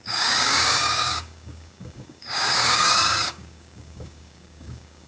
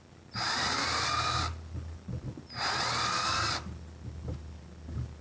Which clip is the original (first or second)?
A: second